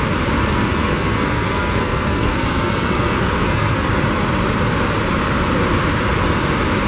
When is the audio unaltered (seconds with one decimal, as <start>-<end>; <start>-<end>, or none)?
0.0-0.4; 3.9-6.9